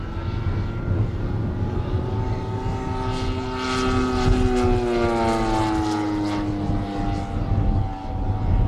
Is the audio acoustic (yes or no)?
yes